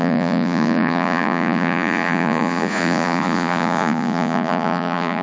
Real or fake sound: fake